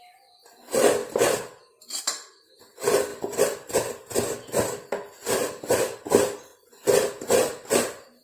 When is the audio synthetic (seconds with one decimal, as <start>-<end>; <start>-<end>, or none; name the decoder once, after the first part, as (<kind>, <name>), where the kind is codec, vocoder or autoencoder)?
3.1-3.7 (vocoder, BigVGAN v2)